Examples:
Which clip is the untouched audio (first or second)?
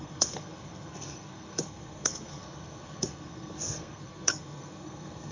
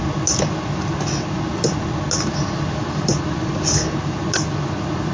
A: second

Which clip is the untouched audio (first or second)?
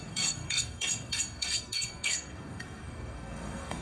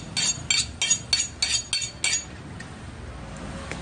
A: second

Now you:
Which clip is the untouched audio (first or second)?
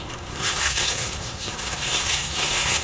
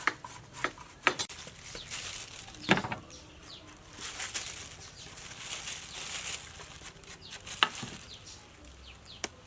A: second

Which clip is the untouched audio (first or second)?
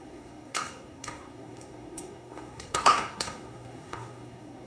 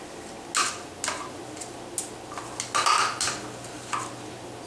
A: second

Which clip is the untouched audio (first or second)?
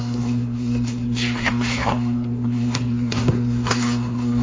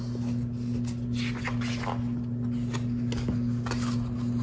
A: second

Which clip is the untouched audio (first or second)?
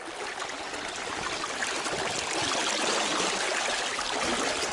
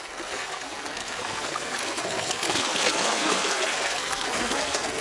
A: first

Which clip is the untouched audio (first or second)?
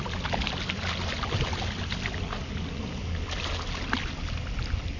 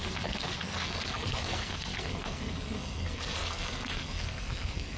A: first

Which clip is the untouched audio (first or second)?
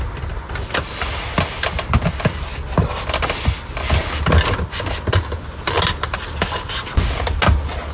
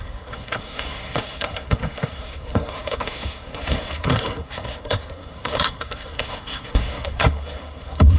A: first